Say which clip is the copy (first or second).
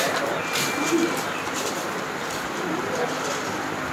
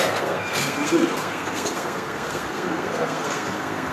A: second